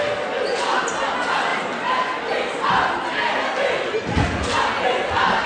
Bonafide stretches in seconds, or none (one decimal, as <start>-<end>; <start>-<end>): 0.0-5.5